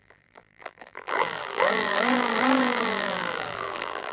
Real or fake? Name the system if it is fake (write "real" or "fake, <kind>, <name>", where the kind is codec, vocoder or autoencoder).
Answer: fake, vocoder, BigVGAN v2